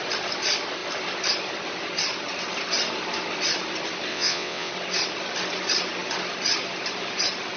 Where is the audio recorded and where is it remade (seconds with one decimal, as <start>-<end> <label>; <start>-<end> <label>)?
0.0-4.1 recorded; 4.1-4.7 remade; 4.7-7.6 recorded